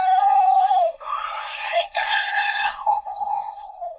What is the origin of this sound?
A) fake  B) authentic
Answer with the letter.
A